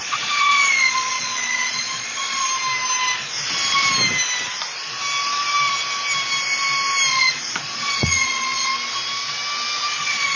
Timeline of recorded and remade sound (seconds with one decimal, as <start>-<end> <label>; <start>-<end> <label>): 0.0-2.5 remade; 2.5-7.1 recorded; 7.1-8.7 remade; 8.7-9.9 recorded; 9.9-10.4 remade